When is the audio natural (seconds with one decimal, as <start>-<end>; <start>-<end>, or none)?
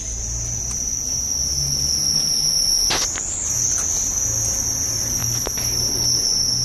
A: 0.0-6.6